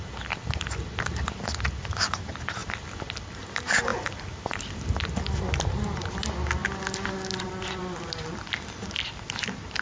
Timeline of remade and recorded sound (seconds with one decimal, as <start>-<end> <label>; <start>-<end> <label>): 0.0-9.8 recorded